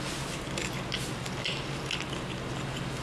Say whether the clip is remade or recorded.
recorded